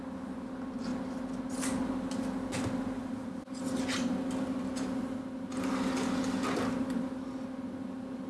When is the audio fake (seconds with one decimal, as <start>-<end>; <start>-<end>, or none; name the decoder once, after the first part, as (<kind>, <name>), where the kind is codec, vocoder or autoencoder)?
none